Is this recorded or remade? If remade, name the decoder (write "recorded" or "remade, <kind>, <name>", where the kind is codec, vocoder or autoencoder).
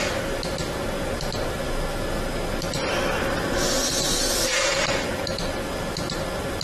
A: recorded